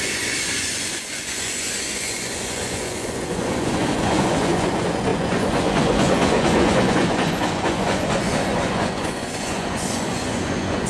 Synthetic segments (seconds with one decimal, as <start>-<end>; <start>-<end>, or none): 0.0-10.9